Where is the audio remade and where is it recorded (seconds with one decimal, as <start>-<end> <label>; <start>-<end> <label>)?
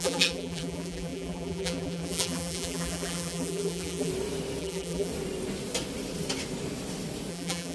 0.0-4.1 remade; 4.1-4.6 recorded; 4.6-5.1 remade; 5.1-7.3 recorded; 7.3-7.7 remade